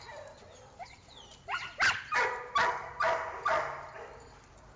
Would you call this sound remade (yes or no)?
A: no